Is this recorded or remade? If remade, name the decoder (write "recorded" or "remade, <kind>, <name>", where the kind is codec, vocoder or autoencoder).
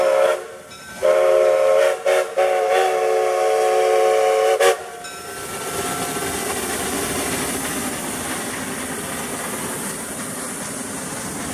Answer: recorded